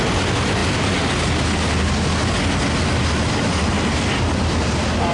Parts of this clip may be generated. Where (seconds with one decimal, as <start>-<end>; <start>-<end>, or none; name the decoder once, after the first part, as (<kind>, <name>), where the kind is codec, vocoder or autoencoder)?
none